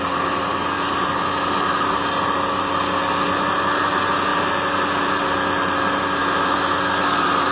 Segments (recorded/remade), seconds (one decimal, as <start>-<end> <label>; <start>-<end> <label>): 0.0-7.5 recorded